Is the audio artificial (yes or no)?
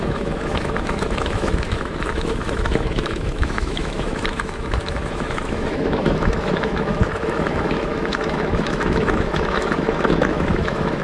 yes